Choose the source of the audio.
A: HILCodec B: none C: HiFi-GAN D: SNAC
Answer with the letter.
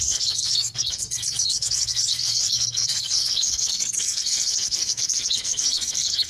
D